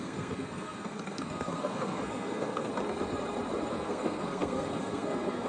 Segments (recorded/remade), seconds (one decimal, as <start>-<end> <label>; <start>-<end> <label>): 0.0-2.7 remade; 2.7-3.7 recorded; 3.7-5.5 remade